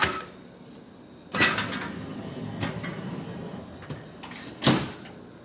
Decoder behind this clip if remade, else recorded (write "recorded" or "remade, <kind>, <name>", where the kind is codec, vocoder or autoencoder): recorded